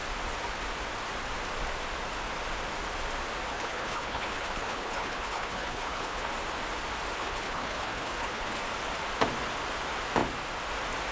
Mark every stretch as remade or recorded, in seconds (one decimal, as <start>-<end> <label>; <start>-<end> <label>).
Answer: 0.0-3.5 recorded; 3.5-6.3 remade; 6.3-7.2 recorded; 7.2-8.6 remade; 8.6-11.1 recorded